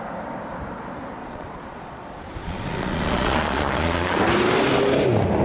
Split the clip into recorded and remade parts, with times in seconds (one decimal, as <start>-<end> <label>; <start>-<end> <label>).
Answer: 0.0-1.2 recorded; 1.2-2.0 remade; 2.0-2.4 recorded; 2.4-4.2 remade; 4.2-5.4 recorded